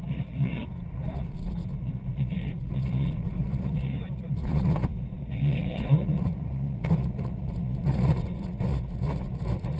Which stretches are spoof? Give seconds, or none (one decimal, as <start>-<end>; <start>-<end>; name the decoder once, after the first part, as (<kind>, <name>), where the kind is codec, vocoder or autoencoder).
0.0-9.8 (vocoder, Vocos)